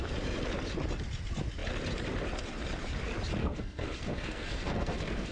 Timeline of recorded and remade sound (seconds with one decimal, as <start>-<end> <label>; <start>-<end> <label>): 0.0-3.4 recorded; 3.4-5.3 remade